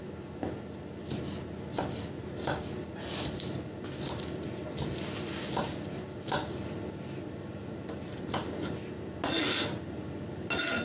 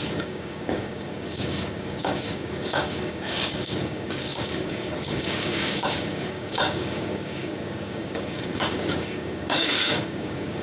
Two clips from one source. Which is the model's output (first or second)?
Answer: second